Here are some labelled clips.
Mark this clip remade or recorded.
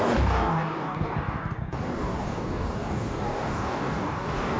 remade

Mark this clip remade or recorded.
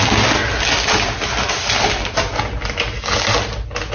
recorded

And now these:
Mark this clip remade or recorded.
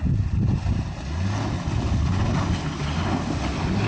recorded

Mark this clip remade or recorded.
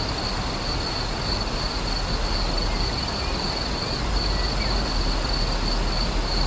recorded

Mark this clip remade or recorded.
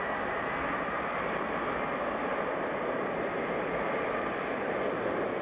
recorded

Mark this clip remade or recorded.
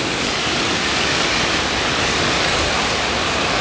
remade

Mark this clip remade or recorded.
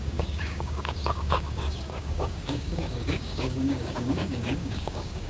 remade